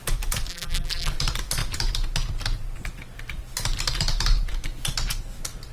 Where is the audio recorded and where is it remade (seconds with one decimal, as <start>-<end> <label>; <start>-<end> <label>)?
0.0-0.5 recorded; 0.5-1.1 remade; 1.1-5.7 recorded